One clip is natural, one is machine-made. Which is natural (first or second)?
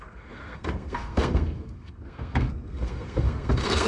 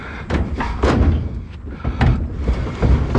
second